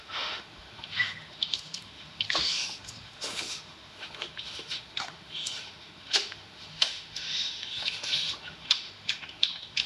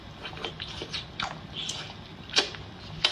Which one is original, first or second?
second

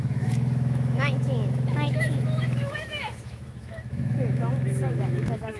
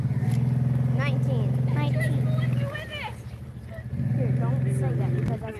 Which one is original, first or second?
second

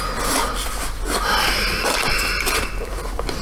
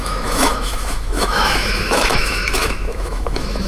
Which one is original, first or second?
first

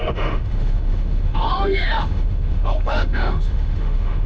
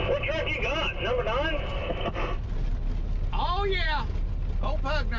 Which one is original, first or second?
second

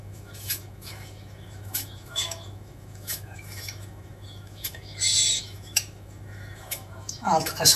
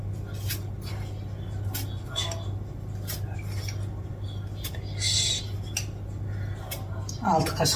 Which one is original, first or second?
second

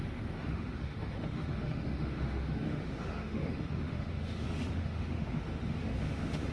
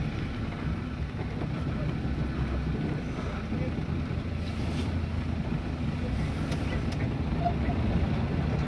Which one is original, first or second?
second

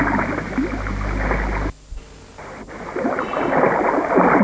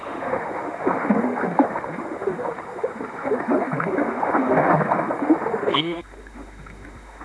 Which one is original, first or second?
first